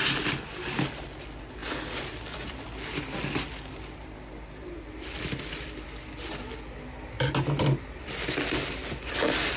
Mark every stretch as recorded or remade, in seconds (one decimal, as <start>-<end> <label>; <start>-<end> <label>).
0.0-9.6 recorded